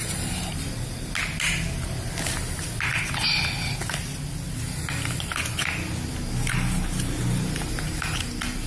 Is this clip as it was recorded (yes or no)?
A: yes